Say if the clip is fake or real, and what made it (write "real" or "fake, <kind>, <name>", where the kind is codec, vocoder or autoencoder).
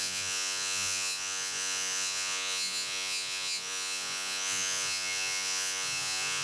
fake, vocoder, Vocos